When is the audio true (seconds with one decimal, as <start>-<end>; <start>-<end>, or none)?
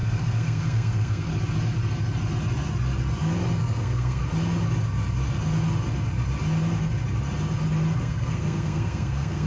1.3-3.6; 4.2-8.0